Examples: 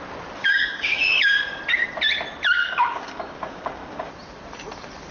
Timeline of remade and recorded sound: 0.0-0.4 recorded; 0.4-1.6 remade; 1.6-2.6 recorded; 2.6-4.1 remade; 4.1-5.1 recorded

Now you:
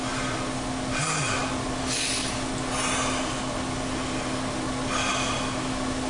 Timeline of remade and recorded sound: 0.0-6.1 recorded

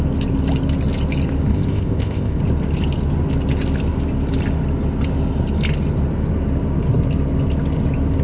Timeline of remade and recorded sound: 0.0-1.5 recorded; 1.5-2.4 remade; 2.4-8.2 recorded

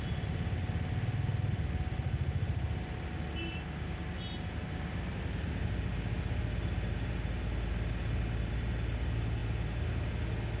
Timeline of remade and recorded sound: 0.0-10.6 recorded

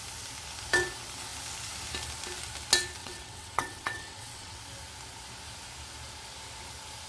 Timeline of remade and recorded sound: 0.0-3.0 recorded; 3.0-4.6 remade; 4.6-7.1 recorded